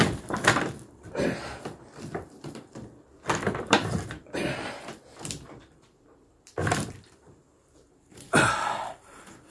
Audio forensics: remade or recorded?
remade